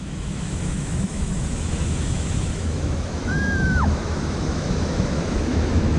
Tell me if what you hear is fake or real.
fake